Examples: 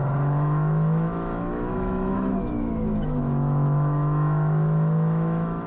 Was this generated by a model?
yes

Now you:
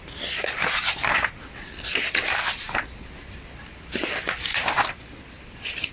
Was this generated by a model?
no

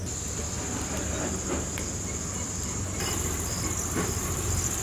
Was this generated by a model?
no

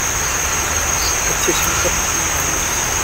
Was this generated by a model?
no